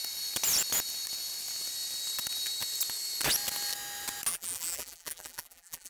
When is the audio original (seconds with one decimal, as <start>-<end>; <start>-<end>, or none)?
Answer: 0.0-4.3